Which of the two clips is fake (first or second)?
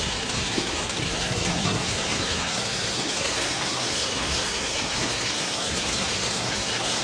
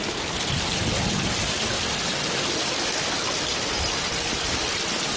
first